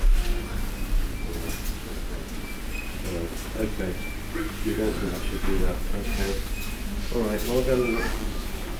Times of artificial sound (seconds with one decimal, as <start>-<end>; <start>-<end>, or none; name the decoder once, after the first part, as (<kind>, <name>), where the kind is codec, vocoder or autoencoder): none